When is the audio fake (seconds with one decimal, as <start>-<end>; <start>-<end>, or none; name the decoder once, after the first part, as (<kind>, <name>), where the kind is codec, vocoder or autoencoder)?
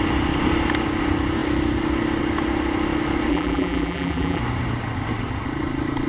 3.3-4.4 (vocoder, BigVGAN v2)